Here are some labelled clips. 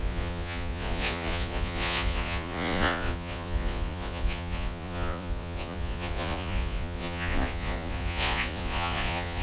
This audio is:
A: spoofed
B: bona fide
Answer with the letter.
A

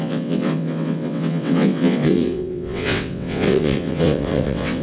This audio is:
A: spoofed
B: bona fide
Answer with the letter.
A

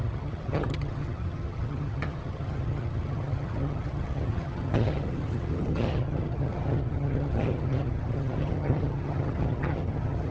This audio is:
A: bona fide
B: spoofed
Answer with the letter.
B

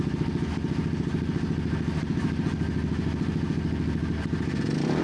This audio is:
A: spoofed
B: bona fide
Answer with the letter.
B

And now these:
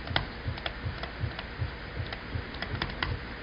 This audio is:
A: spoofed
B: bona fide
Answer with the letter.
B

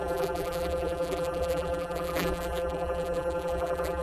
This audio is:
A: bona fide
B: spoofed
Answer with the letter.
B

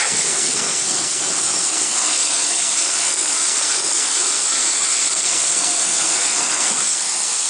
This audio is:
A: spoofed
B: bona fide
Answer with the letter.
A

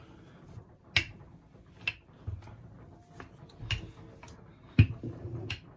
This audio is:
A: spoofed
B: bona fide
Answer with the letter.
B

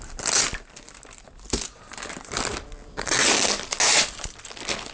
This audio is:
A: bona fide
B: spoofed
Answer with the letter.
A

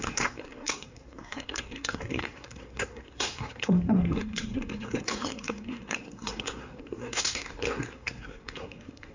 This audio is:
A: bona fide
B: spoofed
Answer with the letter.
B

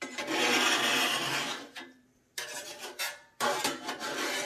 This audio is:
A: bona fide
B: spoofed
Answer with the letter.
B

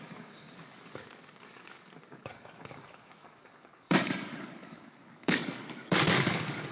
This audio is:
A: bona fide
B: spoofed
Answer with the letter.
B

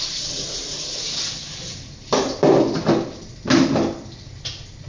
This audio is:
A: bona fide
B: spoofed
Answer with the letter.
A